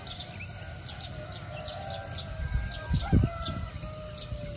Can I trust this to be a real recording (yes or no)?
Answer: yes